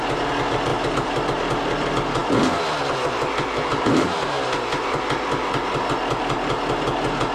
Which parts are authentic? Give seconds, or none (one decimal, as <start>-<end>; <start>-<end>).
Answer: 0.0-0.7; 1.4-3.7; 5.0-7.3

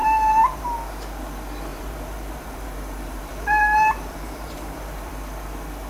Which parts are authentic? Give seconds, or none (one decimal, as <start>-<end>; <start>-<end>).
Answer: 0.6-1.7; 5.1-5.9

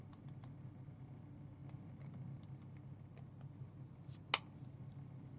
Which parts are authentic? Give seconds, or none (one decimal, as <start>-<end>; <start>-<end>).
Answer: 1.6-4.8

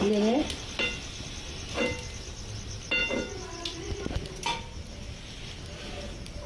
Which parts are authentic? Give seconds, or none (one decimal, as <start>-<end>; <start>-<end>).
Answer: 0.0-6.5

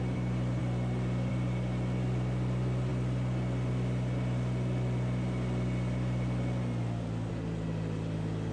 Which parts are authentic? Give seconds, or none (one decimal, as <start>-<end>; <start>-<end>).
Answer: 0.6-1.3; 2.9-7.3